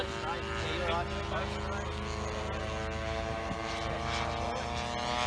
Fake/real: real